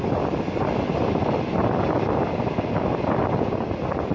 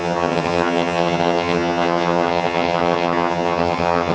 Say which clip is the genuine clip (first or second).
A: first